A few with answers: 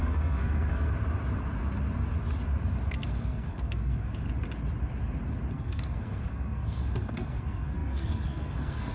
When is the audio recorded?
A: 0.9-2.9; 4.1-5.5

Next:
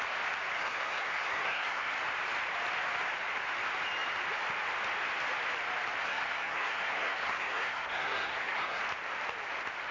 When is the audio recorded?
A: 0.0-0.6; 1.9-6.0; 8.8-9.9